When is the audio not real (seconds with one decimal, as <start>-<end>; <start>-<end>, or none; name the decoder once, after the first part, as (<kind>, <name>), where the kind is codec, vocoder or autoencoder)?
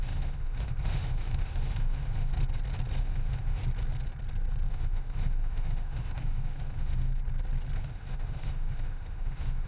0.0-2.3 (autoencoder, DAC-VAE); 3.0-3.6; 4.7-7.1; 7.8-9.7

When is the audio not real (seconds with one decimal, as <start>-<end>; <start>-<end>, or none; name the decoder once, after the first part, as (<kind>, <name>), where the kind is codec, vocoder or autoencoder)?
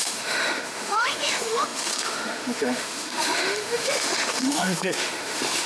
0.0-5.7 (autoencoder, DAC-VAE)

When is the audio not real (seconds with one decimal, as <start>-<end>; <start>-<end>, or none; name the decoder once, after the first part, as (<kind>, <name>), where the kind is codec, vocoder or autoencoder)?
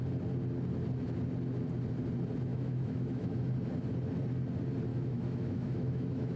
2.5-3.5 (autoencoder, DAC-VAE); 4.9-6.4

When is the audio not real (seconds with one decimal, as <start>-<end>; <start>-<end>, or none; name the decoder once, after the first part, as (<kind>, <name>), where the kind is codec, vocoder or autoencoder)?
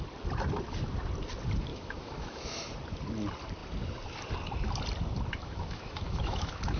1.7-2.6 (autoencoder, DAC-VAE); 5.4-6.8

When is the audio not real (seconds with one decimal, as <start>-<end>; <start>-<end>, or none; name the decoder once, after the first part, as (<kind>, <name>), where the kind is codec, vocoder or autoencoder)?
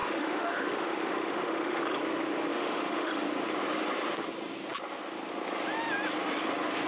0.0-1.8 (autoencoder, DAC-VAE); 2.5-3.1